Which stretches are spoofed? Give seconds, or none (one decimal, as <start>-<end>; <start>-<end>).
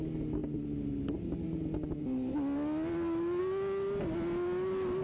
none